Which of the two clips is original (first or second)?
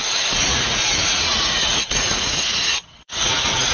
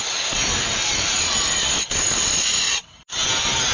second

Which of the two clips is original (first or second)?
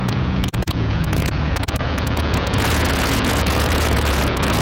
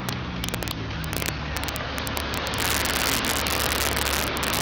second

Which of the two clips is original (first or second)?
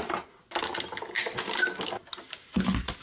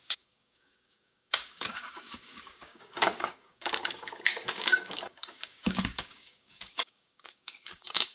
first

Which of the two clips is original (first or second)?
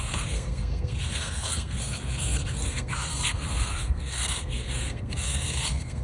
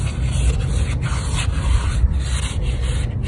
second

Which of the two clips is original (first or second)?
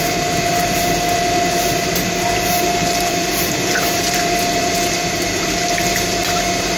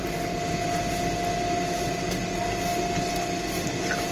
second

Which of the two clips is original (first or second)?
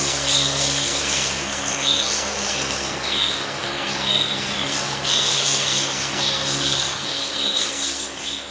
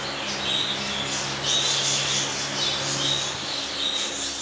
second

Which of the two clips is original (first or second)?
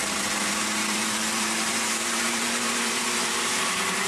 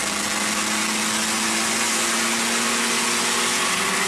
second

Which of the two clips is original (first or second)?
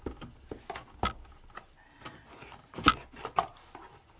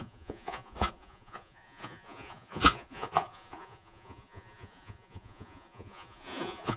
first